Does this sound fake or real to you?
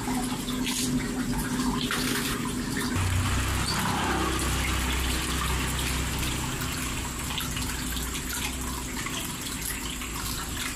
real